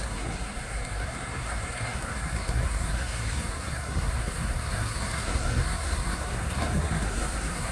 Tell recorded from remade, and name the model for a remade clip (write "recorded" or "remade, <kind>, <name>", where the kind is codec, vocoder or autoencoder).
remade, codec, SNAC